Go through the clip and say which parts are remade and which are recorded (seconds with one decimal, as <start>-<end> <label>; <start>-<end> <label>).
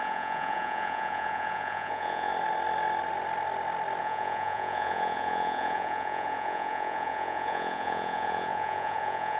0.0-2.3 remade; 2.3-4.0 recorded; 4.0-9.4 remade